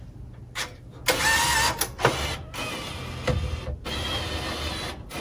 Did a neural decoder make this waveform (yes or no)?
no